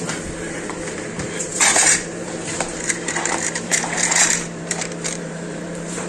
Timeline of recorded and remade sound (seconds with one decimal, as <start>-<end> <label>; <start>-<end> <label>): 0.0-6.1 remade